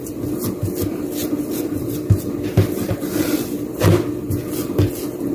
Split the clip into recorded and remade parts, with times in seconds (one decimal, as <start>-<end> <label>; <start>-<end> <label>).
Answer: 0.0-1.2 recorded; 1.2-3.8 remade; 3.8-5.3 recorded